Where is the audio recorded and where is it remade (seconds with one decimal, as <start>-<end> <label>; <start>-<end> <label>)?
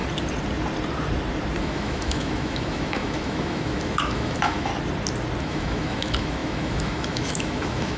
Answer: 0.0-1.6 recorded; 1.6-4.7 remade; 4.7-5.4 recorded; 5.4-8.0 remade